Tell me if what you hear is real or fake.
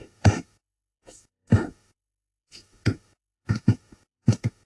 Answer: fake